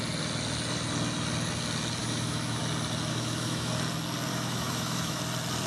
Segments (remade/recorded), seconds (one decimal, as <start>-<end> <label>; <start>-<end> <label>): 0.0-2.0 recorded; 2.0-2.6 remade; 2.6-3.1 recorded; 3.1-3.7 remade; 3.7-4.3 recorded; 4.3-5.2 remade; 5.2-5.7 recorded